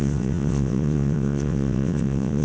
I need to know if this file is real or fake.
fake